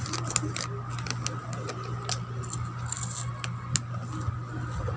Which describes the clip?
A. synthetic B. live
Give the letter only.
B